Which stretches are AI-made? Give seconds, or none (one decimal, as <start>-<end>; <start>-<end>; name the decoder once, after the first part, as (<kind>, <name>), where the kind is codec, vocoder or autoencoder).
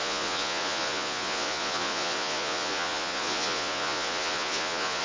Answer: 0.0-5.0 (vocoder, Vocos)